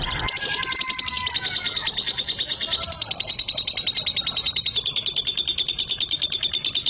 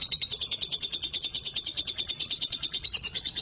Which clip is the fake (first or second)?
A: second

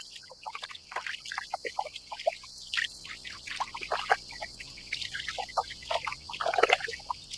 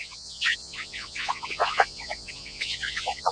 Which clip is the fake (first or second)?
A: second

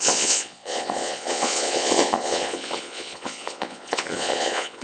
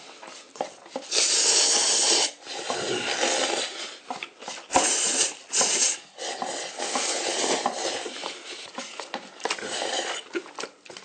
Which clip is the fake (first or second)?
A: first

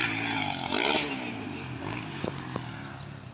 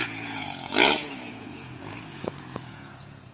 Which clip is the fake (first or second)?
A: second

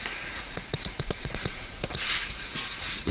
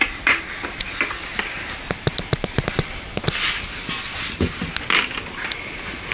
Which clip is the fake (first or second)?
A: first